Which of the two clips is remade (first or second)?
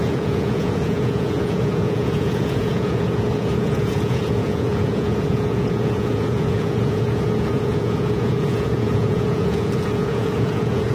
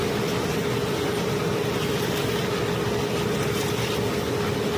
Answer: first